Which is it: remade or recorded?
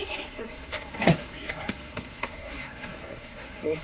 remade